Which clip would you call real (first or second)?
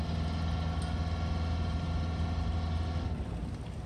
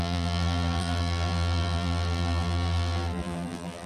first